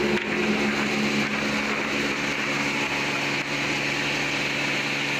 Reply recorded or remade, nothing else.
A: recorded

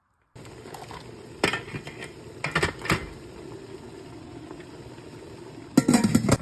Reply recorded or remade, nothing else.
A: recorded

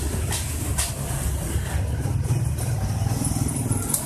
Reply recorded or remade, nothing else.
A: recorded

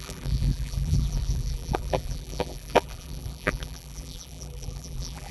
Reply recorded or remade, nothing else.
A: remade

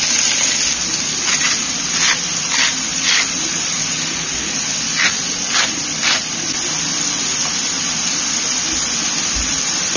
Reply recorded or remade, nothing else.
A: recorded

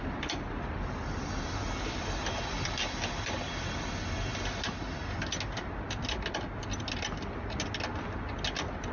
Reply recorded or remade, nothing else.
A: recorded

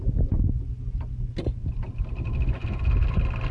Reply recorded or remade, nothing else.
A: recorded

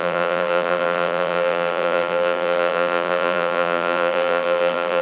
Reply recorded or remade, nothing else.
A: remade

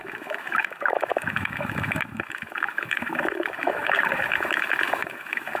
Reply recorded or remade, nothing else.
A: remade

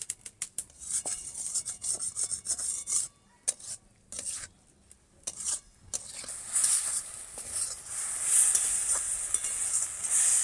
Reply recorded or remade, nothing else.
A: recorded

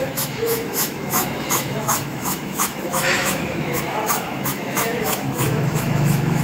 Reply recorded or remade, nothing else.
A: remade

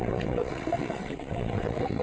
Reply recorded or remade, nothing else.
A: remade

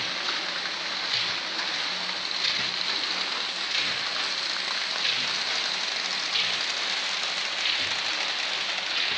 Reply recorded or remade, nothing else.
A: recorded